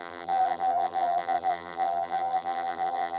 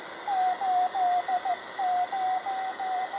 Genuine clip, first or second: second